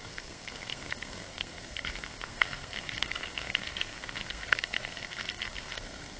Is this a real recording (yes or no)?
no